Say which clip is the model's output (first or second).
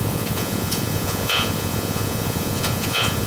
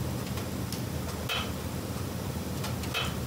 first